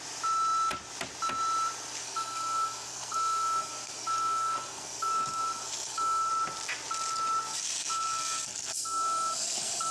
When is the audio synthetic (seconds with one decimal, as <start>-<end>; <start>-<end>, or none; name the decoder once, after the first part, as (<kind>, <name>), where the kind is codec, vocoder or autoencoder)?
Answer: 2.0-6.3 (codec, SNAC); 7.5-9.9